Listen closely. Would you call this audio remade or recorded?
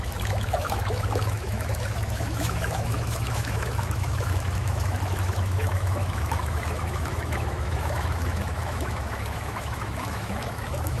remade